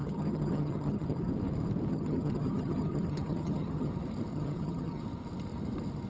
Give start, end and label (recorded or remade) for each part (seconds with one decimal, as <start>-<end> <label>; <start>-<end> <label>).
0.0-1.3 remade; 1.3-1.9 recorded; 1.9-3.9 remade; 3.9-4.3 recorded; 4.3-5.0 remade; 5.0-6.1 recorded